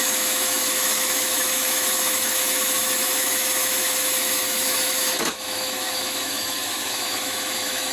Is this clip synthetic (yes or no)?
yes